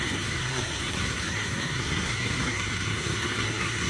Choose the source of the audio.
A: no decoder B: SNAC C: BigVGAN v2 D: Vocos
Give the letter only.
B